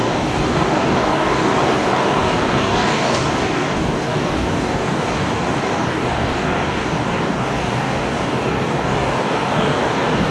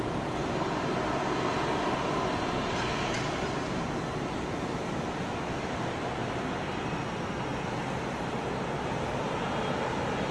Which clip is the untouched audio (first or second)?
second